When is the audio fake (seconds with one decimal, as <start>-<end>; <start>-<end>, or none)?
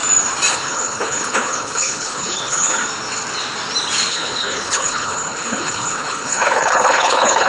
0.5-2.8; 4.1-7.5